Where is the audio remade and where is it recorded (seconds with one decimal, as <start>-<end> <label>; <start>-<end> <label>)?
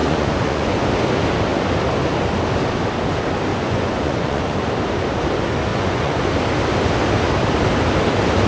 0.0-0.9 remade; 0.9-3.5 recorded; 3.5-4.7 remade; 4.7-5.7 recorded; 5.7-6.3 remade; 6.3-8.5 recorded